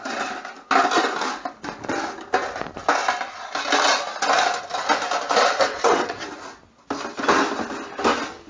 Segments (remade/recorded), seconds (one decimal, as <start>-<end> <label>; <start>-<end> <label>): 0.0-5.7 recorded; 5.7-6.2 remade; 6.2-8.5 recorded